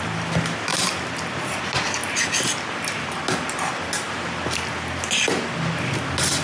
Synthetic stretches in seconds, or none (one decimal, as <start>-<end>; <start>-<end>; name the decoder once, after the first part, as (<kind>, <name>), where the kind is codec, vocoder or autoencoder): none